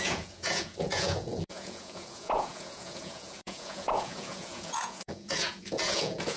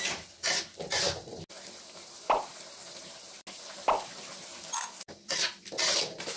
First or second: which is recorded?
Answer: second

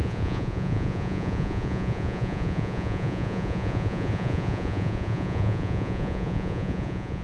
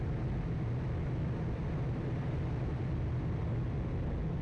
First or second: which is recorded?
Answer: second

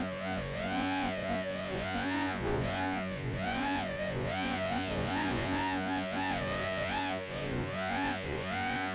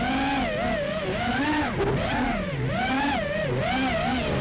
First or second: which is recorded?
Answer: second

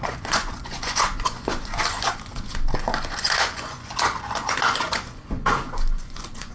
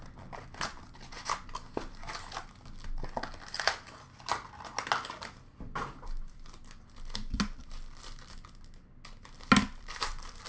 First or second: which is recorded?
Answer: second